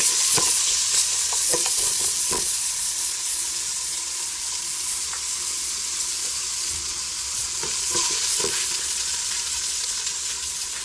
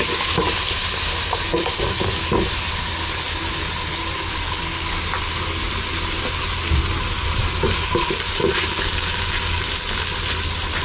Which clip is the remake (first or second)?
first